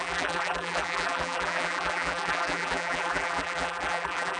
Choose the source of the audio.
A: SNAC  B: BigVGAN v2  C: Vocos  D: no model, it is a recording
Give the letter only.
B